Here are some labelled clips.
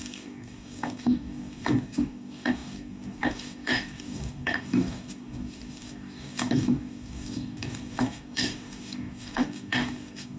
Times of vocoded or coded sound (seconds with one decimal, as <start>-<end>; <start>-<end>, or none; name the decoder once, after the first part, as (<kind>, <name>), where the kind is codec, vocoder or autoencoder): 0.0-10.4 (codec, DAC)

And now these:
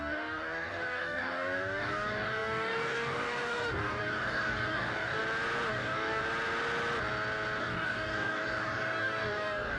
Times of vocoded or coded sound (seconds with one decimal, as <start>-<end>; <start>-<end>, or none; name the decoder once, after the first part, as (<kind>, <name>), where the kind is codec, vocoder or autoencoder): 0.0-5.2 (codec, DAC); 5.7-6.2; 7.6-9.8

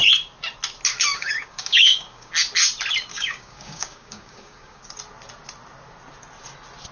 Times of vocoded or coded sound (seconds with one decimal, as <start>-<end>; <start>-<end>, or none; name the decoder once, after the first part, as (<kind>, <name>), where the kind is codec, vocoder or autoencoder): 1.1-2.3 (codec, DAC); 3.1-4.8

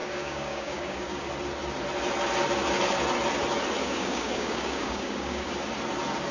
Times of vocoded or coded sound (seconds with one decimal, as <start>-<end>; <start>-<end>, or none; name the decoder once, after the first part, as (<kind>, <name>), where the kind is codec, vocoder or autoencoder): 0.0-1.3 (codec, DAC); 3.8-5.5

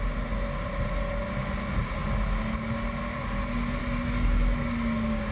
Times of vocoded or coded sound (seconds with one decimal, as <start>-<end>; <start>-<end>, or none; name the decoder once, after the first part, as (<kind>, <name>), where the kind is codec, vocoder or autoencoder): 3.8-5.3 (codec, DAC)

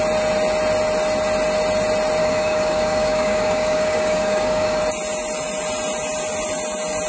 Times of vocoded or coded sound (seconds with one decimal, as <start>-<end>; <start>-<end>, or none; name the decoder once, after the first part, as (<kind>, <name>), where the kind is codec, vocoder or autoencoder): 2.2-4.8 (codec, DAC)

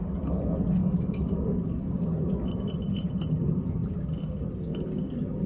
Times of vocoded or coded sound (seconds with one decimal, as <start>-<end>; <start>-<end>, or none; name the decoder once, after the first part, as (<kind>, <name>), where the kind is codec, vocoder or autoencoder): 0.8-1.5 (codec, DAC)

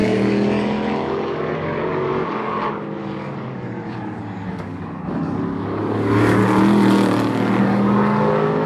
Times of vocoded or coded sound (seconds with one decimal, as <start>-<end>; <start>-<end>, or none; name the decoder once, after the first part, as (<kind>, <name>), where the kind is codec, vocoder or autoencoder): 0.0-6.4 (codec, DAC); 7.6-8.7